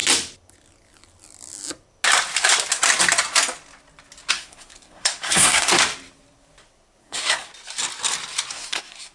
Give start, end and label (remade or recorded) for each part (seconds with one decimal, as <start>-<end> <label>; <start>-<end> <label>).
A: 0.0-4.3 recorded; 4.3-5.7 remade; 5.7-7.0 recorded; 7.0-7.5 remade; 7.5-8.5 recorded; 8.5-9.1 remade